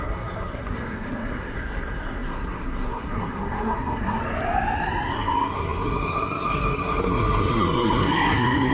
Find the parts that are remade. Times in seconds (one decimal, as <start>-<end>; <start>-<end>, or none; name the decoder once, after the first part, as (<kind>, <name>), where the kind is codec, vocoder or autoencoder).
0.0-4.2 (codec, SNAC); 5.1-8.7